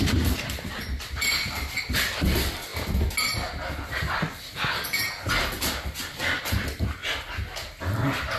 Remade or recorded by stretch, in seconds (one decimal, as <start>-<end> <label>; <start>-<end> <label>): 0.0-2.7 remade; 2.7-6.4 recorded; 6.4-7.0 remade; 7.0-7.8 recorded; 7.8-8.4 remade